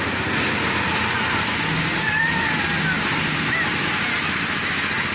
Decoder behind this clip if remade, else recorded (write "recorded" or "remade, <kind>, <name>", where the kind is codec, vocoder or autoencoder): recorded